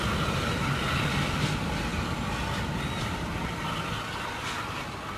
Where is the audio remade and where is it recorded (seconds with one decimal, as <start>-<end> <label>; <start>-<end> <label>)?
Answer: 0.0-5.2 recorded